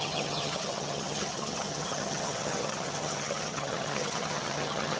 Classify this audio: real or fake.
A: fake